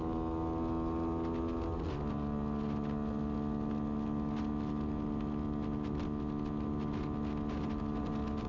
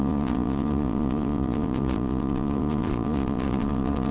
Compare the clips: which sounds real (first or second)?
first